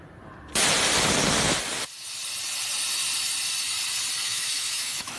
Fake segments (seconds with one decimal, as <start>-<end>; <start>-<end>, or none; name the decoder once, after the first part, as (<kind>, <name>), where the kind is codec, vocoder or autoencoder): 4.2-5.2 (autoencoder, DAC-VAE)